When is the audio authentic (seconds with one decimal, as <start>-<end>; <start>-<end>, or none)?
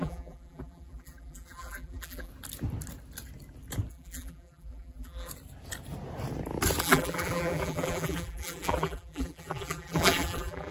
2.3-3.9; 5.3-6.8